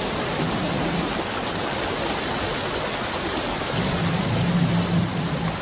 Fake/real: real